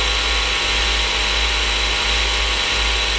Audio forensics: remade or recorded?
recorded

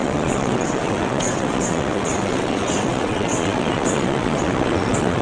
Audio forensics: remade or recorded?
remade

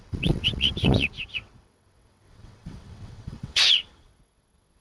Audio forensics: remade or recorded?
remade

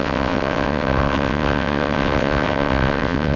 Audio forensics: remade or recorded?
remade